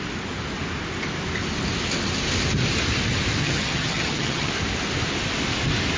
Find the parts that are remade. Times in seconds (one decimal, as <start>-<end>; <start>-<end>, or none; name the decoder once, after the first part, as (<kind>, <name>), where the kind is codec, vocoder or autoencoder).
3.4-4.5 (vocoder, HiFi-GAN)